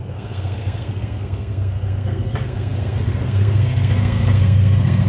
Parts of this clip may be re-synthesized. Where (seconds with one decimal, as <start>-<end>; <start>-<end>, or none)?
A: 0.0-5.1